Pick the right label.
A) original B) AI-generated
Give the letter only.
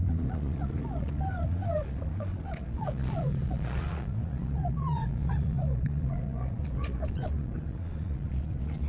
B